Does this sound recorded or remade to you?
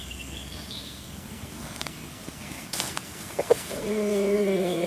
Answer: remade